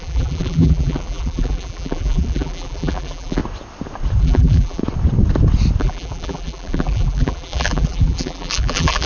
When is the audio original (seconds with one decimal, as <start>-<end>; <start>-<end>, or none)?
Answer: 3.4-4.2; 4.8-5.8